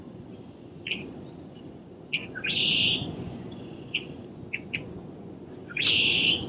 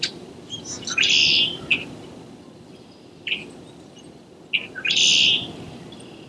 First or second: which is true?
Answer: second